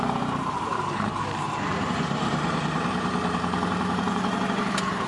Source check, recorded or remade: remade